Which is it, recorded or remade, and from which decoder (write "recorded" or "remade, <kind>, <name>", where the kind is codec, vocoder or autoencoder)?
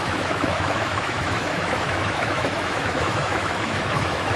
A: remade, autoencoder, DAC-VAE